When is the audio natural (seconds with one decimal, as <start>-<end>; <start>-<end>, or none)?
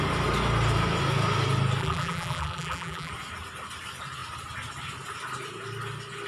0.0-1.8; 3.1-6.3